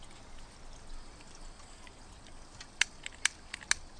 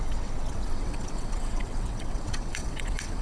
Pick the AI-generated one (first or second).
second